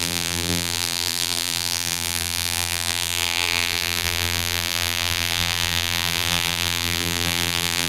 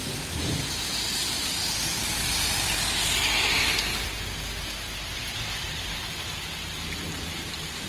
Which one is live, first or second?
second